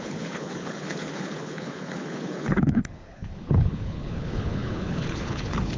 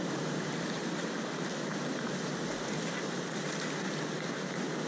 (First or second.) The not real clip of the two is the first